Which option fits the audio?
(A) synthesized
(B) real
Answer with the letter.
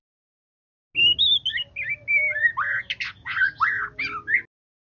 B